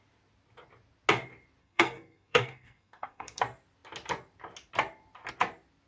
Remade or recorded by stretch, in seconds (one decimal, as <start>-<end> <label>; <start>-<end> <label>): 0.0-1.6 recorded; 1.6-3.4 remade; 3.4-5.9 recorded